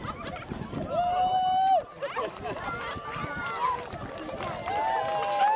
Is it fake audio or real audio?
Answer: real